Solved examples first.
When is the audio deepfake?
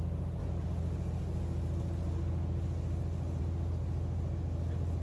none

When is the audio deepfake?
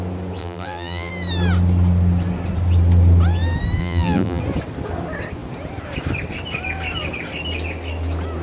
0.4-1.1 (vocoder, BigVGAN v2); 3.8-4.4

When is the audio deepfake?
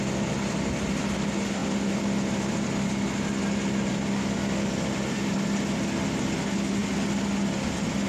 none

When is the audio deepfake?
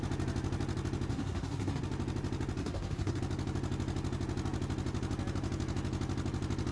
1.1-1.8 (codec, SNAC); 2.6-3.2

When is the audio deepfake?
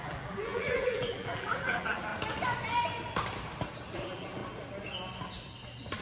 0.0-2.1 (vocoder, BigVGAN v2); 4.0-4.4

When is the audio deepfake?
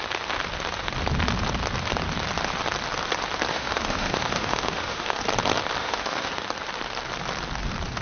3.5-5.2 (autoencoder, DAC-VAE); 5.8-6.3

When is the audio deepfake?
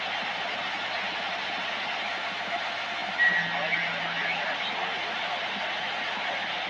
none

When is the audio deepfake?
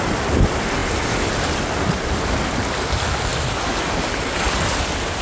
none